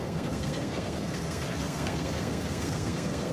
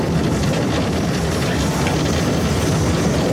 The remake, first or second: first